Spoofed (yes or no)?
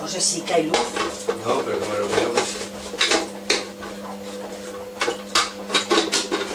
no